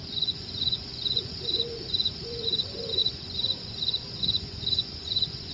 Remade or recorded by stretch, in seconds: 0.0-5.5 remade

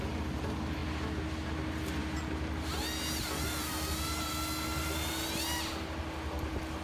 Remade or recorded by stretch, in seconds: 0.0-6.8 recorded

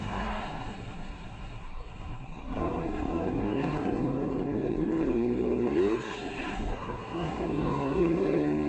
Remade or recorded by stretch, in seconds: 0.0-8.7 remade

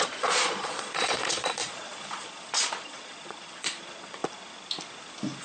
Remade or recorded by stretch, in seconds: 0.0-4.2 remade; 4.2-5.4 recorded

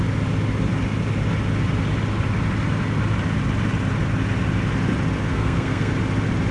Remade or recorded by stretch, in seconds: 0.0-5.3 recorded; 5.3-5.9 remade; 5.9-6.5 recorded

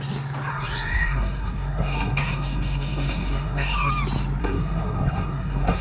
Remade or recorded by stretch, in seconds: 0.0-0.5 recorded; 0.5-3.9 remade; 3.9-4.4 recorded; 4.4-5.8 remade

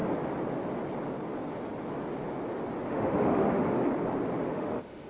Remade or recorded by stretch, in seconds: 0.0-2.9 recorded; 2.9-3.9 remade; 3.9-4.4 recorded; 4.4-5.1 remade